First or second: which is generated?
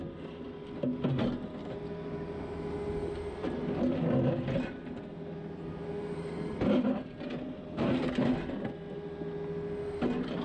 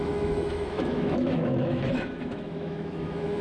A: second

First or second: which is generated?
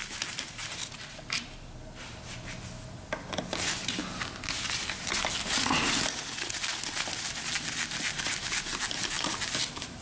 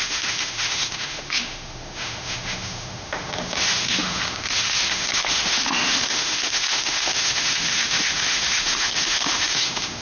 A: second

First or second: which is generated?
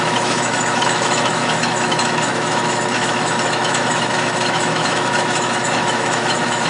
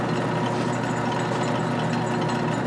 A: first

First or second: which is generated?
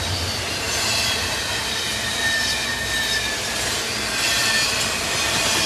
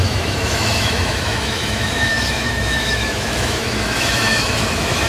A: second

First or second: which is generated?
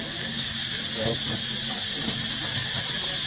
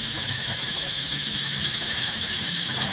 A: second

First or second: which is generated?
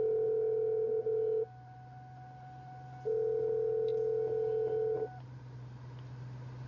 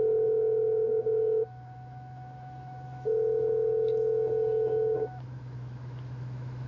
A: second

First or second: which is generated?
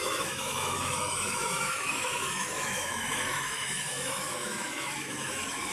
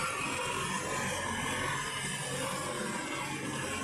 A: first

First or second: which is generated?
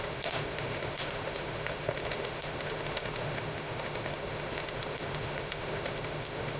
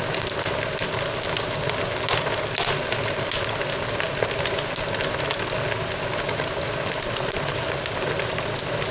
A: first